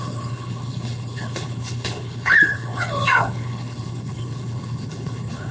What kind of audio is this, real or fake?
fake